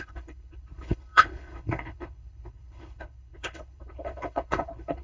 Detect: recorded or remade remade